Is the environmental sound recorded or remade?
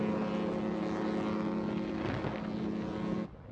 recorded